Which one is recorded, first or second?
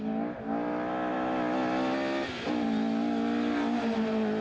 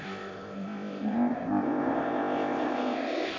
first